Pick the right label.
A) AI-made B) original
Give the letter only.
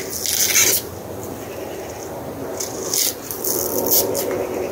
B